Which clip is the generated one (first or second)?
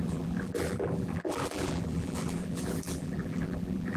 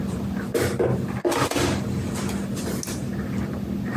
first